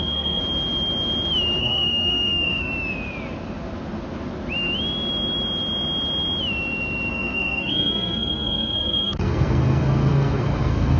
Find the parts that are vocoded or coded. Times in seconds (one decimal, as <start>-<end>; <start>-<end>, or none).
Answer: 0.0-0.4; 1.6-2.7; 7.1-11.0

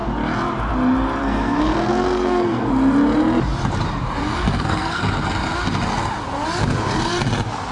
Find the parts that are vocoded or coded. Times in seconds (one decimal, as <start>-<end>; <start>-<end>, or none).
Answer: 1.2-2.7; 4.2-5.0